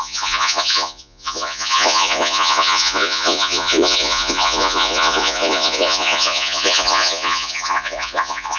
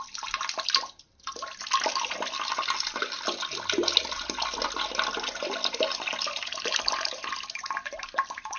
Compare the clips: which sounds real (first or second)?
second